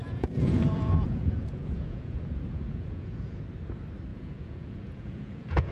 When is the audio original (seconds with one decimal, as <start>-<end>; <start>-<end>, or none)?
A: 3.4-4.1